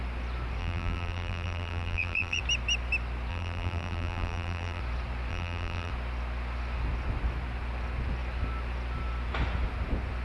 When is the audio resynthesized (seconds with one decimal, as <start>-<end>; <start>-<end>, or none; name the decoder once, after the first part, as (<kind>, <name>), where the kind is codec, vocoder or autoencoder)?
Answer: 0.6-2.4 (vocoder, BigVGAN v2); 3.3-4.8; 5.3-5.9